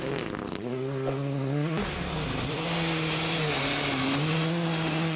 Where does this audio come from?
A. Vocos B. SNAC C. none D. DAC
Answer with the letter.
C